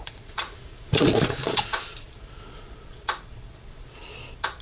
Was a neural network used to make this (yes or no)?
yes